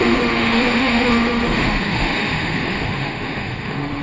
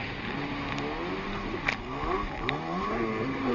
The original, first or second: second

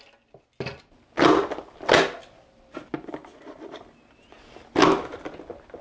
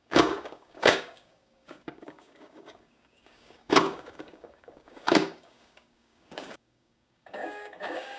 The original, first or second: first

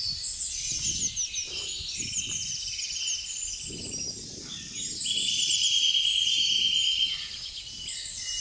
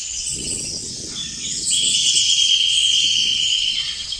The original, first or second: first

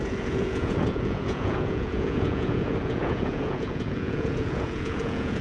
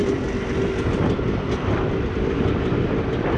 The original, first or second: second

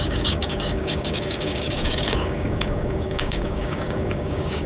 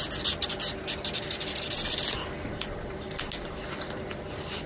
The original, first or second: second